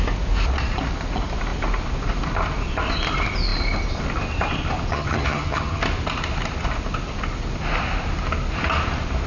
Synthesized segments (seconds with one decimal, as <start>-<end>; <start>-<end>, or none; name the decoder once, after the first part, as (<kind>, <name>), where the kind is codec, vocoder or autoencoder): 4.9-5.8 (vocoder, HiFi-GAN)